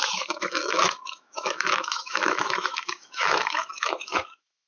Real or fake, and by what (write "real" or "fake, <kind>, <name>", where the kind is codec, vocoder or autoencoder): fake, autoencoder, DAC-VAE